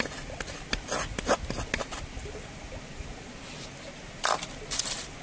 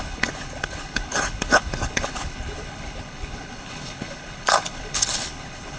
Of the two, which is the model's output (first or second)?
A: second